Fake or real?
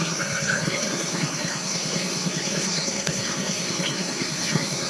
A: fake